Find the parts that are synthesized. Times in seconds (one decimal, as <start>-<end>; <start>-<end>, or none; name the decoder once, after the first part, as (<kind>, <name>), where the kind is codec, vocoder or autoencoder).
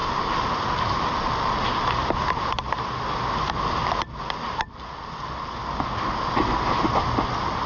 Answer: none